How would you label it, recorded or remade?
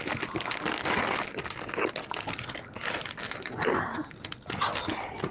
recorded